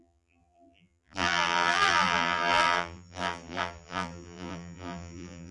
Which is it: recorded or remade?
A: remade